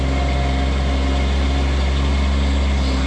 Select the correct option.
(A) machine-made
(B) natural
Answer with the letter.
B